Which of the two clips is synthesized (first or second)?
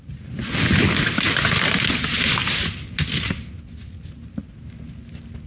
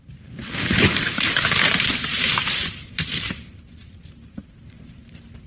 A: second